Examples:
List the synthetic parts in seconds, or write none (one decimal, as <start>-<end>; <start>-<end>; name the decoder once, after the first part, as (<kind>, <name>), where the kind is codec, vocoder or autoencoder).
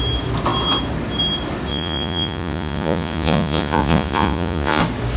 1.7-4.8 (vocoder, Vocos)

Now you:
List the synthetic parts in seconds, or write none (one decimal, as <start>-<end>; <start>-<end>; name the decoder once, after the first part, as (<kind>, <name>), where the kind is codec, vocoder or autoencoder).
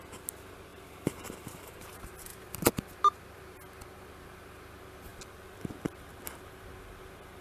0.7-1.7 (vocoder, BigVGAN v2)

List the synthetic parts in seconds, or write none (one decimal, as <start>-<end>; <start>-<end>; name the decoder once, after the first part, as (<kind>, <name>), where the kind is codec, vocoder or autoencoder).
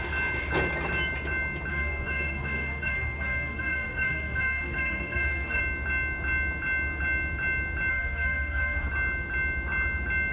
1.7-5.6 (codec, SNAC); 7.9-8.9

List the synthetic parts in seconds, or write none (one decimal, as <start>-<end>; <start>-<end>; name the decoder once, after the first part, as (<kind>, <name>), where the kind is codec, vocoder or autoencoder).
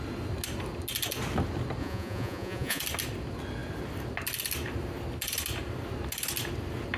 1.8-2.8 (vocoder, Vocos)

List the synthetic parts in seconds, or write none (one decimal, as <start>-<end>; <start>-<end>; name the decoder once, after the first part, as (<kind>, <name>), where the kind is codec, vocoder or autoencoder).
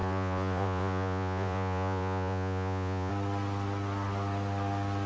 0.0-3.1 (vocoder, Vocos)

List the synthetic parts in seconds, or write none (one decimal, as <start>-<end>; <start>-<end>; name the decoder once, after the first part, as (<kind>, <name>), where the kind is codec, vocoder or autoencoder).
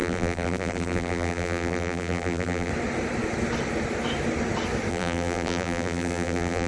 0.0-2.7 (vocoder, BigVGAN v2); 4.9-6.7